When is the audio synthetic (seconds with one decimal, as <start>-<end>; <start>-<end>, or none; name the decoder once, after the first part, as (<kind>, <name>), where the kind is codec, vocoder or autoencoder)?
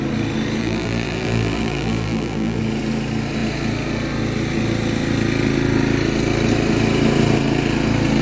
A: 0.6-2.6 (vocoder, BigVGAN v2)